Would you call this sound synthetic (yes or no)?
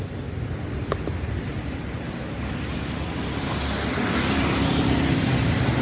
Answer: no